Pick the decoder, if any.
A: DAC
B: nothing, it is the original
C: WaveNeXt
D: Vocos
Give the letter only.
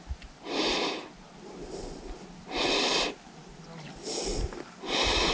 B